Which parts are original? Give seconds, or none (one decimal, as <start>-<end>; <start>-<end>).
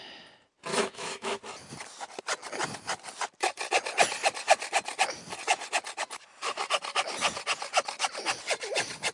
0.0-0.7; 1.4-9.1